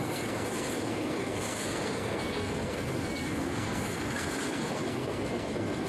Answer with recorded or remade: remade